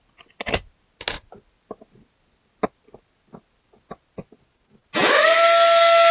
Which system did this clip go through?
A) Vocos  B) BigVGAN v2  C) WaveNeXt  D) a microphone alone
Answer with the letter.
D